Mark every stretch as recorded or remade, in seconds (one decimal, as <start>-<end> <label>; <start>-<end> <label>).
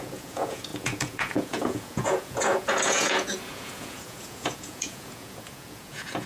0.0-6.3 remade